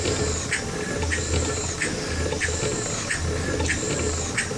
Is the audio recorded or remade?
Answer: recorded